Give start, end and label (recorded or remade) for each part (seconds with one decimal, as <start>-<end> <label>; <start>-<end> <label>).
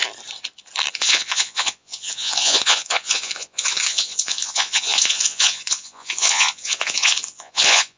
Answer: 0.0-0.9 recorded; 0.9-8.0 remade